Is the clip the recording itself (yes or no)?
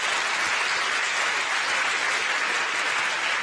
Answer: yes